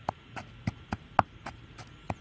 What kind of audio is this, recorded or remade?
recorded